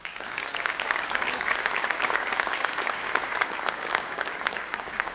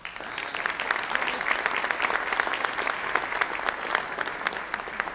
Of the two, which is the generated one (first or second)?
first